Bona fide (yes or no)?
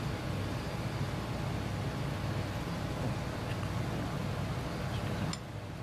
yes